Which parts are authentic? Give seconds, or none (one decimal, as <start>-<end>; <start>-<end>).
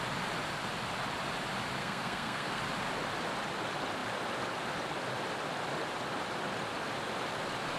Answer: 0.0-1.8; 2.6-7.8